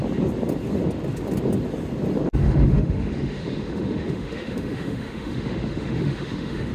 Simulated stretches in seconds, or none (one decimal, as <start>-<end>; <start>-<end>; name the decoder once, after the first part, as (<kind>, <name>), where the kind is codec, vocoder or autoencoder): 2.4-6.7 (autoencoder, DAC-VAE)

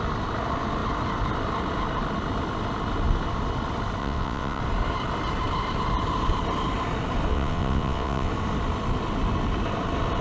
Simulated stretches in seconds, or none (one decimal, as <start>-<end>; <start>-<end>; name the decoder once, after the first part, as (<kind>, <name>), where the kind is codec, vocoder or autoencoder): 4.0-4.6 (vocoder, WaveNeXt); 7.3-8.3

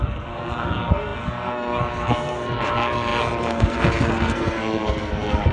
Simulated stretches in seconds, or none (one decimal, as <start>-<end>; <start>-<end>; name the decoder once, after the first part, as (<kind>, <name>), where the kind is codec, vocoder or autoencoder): 0.0-5.5 (codec, SNAC)

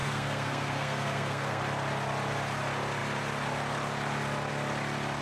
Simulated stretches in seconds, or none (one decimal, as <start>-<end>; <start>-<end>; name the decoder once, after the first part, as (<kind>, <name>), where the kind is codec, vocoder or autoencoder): 0.0-1.6 (codec, SNAC)

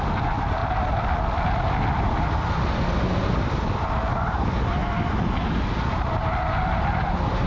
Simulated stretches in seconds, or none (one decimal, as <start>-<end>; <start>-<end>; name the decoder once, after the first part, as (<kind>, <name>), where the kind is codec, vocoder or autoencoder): none